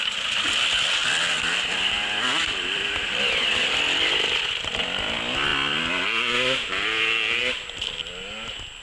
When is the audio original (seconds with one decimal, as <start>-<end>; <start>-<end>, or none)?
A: 0.0-8.8